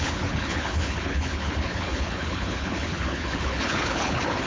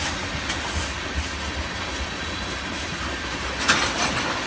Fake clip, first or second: first